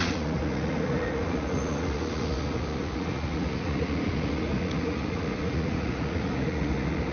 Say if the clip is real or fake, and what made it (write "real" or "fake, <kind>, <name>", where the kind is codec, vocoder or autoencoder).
fake, vocoder, Vocos